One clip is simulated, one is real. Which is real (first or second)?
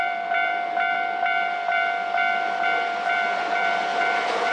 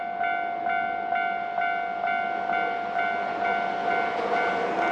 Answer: second